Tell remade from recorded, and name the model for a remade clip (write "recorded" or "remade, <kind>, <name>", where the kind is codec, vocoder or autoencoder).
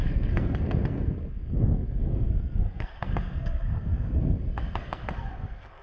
remade, codec, SNAC